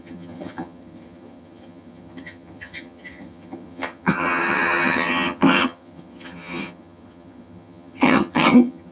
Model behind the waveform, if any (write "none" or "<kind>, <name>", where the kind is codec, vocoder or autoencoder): vocoder, HiFi-GAN